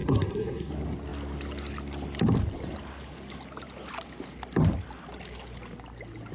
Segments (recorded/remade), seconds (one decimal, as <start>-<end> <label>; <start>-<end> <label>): 0.0-0.7 remade; 0.7-6.3 recorded